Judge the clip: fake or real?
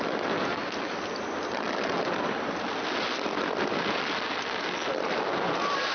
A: real